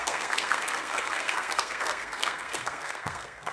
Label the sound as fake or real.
fake